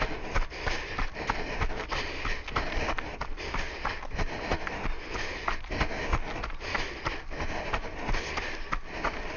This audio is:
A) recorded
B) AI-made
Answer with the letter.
A